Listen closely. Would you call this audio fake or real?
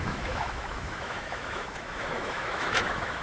fake